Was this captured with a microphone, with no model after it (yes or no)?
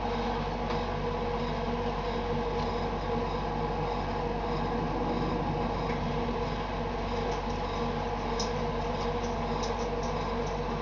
yes